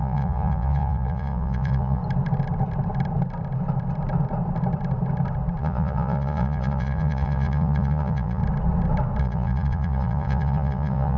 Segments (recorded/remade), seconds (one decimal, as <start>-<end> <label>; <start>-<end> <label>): 0.0-2.0 remade; 2.0-5.6 recorded; 5.6-8.4 remade; 8.4-9.2 recorded; 9.2-11.2 remade